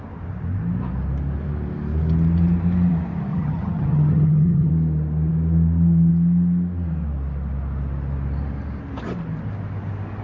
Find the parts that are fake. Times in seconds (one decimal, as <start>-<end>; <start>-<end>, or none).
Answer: 3.3-4.7